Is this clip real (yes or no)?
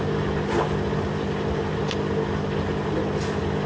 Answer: yes